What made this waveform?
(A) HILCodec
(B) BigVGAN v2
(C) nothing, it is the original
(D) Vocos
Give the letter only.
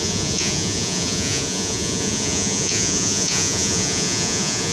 D